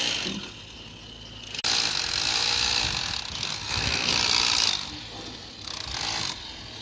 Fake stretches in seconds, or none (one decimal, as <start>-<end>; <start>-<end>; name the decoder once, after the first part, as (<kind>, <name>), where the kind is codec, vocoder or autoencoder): 3.5-4.1 (codec, SNAC)